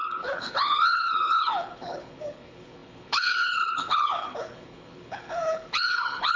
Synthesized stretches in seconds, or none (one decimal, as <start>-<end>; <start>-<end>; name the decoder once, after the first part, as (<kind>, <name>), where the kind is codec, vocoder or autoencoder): 0.0-6.4 (codec, HILCodec)